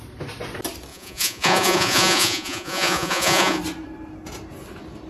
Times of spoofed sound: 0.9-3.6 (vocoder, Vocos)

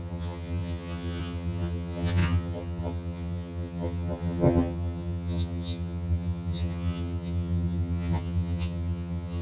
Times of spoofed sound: 0.0-9.4 (vocoder, HiFi-GAN)

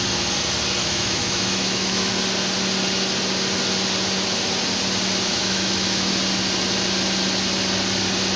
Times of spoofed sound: 0.8-2.1 (autoencoder, DAC-VAE); 5.3-6.1

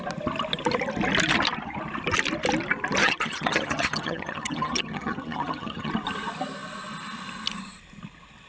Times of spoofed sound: 3.0-5.9 (vocoder, HiFi-GAN)

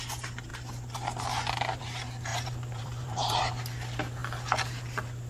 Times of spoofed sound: 2.3-3.4 (vocoder, BigVGAN v2)

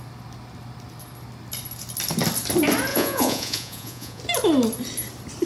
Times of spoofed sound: 2.9-4.2 (vocoder, Vocos)

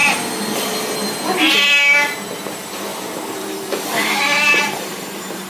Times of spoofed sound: 2.9-5.5 (vocoder, BigVGAN v2)

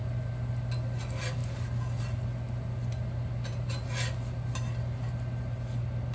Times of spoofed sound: none